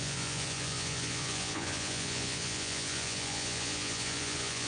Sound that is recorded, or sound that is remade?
remade